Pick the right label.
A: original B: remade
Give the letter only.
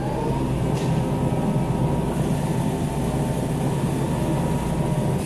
A